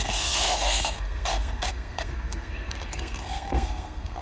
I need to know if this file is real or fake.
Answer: fake